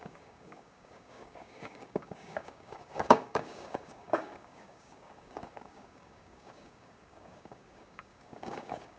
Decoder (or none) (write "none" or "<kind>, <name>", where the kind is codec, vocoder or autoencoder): codec, DAC